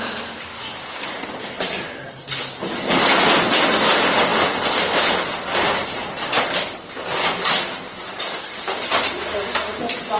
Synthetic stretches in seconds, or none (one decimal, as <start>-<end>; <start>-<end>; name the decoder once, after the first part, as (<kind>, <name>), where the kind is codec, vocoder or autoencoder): none